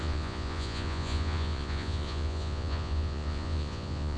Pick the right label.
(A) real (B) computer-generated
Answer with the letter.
B